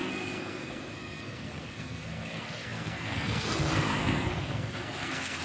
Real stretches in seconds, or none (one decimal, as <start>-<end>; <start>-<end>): none